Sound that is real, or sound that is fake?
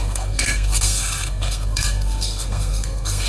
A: fake